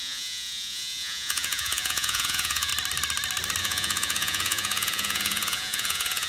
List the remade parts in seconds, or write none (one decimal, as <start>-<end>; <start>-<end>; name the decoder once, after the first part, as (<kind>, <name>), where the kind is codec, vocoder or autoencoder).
0.0-2.7 (vocoder, Vocos); 3.6-6.3